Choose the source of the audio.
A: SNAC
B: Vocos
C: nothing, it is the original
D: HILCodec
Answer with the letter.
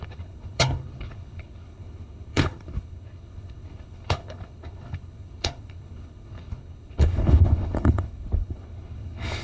D